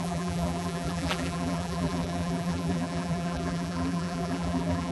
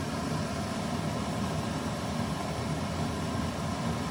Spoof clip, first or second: first